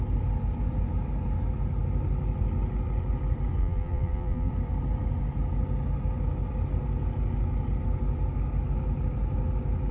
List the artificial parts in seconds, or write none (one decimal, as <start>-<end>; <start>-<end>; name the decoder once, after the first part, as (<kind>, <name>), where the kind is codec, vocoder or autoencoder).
3.6-4.5 (vocoder, BigVGAN v2)

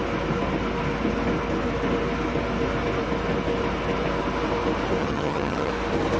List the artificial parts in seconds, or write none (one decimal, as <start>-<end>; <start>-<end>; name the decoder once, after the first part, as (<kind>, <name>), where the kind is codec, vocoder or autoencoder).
5.0-5.7 (vocoder, HiFi-GAN)

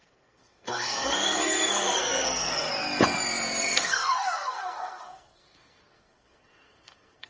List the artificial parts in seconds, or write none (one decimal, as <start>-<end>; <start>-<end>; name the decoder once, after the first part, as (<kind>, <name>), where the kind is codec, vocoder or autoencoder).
0.0-2.7 (codec, SNAC); 3.6-7.3

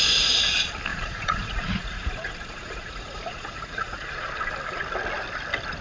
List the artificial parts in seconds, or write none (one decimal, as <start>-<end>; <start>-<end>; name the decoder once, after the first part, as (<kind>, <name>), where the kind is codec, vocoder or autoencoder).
0.9-4.3 (vocoder, Vocos)